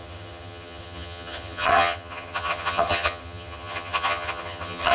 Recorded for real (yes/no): no